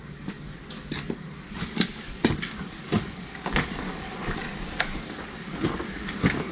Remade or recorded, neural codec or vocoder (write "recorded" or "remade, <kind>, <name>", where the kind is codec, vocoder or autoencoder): remade, codec, DAC